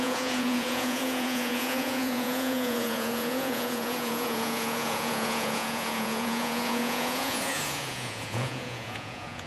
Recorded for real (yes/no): no